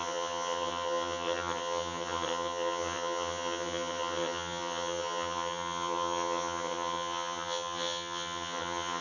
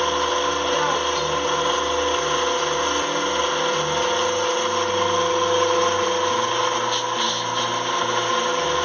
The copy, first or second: first